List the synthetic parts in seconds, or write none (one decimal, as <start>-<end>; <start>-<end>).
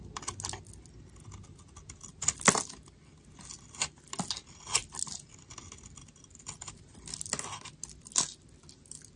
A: none